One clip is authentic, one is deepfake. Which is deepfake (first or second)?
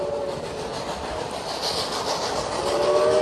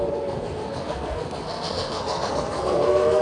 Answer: second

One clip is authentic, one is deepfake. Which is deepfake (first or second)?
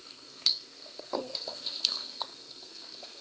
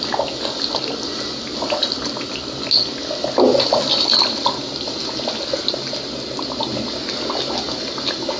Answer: first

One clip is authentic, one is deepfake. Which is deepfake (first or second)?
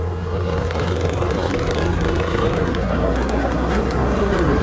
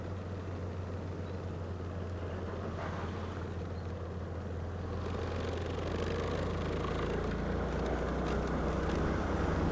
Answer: first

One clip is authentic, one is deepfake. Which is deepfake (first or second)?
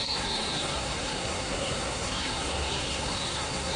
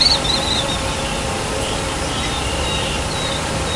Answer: first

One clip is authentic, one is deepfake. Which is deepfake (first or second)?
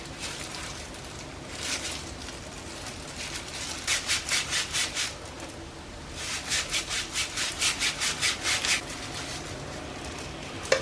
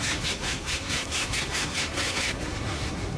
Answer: second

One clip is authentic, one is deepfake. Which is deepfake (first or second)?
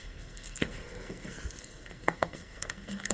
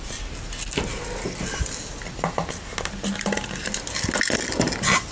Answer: first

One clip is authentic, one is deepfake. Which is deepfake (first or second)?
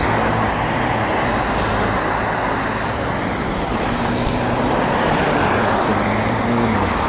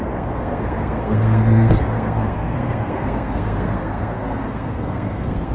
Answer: second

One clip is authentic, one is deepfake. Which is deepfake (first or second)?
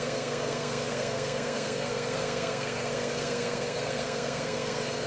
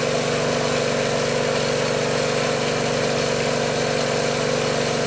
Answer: first